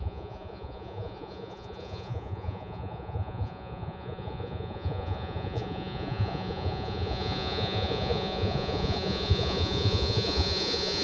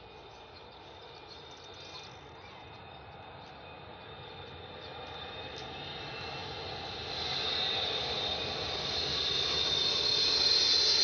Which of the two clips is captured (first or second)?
second